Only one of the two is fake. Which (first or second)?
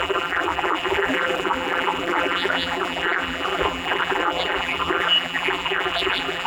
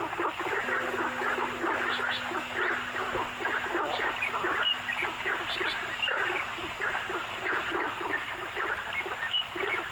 first